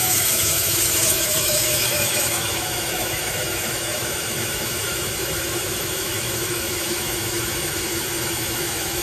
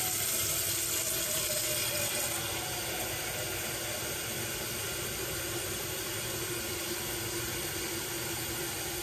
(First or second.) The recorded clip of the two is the second